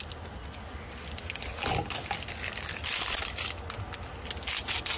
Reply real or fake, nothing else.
real